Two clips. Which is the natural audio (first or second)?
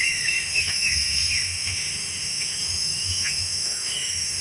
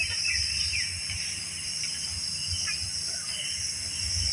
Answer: second